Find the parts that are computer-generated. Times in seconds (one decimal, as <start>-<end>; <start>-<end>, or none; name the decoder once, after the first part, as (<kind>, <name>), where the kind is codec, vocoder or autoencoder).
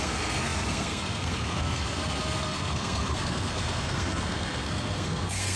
0.0-5.6 (codec, SNAC)